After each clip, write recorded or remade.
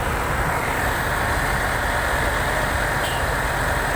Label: recorded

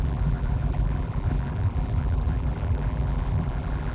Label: remade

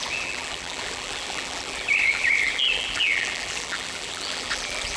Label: remade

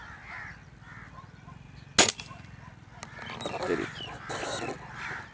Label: recorded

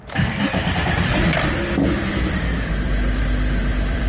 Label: remade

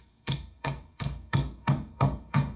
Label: remade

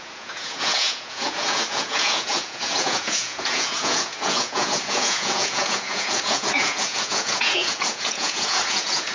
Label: remade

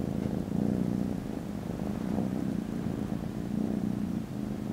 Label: recorded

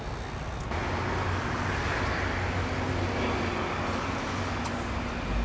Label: recorded